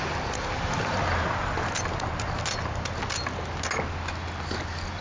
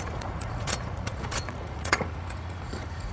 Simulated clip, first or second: second